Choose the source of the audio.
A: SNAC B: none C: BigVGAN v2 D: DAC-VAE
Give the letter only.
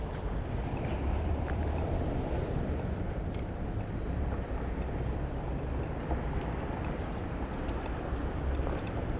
C